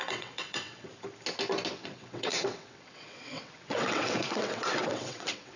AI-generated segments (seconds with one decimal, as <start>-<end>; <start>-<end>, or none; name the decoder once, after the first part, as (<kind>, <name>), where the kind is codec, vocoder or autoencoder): 0.0-0.9 (vocoder, WaveNeXt); 1.7-5.6